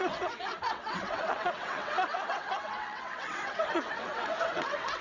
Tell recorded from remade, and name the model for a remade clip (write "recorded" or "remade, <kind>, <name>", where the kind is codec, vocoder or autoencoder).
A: remade, vocoder, WaveNeXt